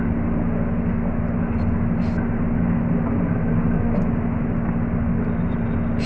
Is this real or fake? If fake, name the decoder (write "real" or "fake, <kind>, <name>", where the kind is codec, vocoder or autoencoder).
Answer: real